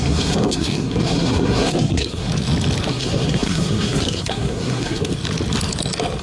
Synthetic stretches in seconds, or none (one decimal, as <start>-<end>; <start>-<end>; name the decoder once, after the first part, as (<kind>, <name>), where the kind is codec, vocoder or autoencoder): 0.0-2.3 (codec, SNAC); 2.9-5.1